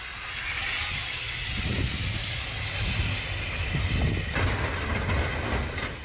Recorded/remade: recorded